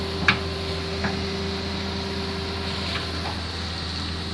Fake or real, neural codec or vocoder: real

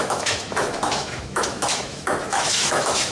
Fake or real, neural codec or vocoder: fake, autoencoder, DAC-VAE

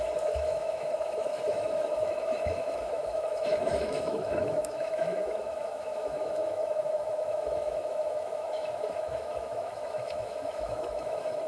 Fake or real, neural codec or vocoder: fake, autoencoder, DAC-VAE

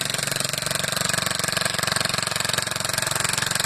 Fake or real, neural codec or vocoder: real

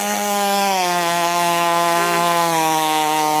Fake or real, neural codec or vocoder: fake, codec, SNAC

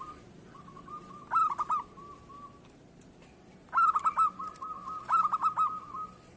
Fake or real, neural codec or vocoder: real